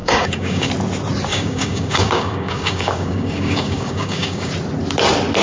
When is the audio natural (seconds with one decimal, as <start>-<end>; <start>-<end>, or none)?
0.7-1.3; 4.5-5.4